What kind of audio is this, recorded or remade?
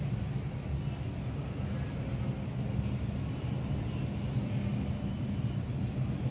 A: recorded